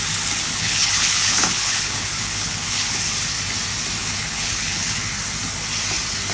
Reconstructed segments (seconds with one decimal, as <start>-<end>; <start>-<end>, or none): 0.4-3.0; 4.0-5.0